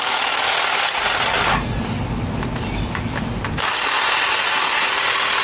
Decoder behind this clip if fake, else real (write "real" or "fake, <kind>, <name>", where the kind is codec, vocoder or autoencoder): real